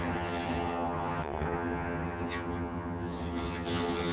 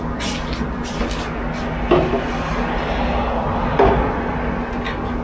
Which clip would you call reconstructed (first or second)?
first